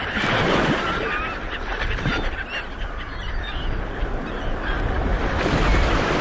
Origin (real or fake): real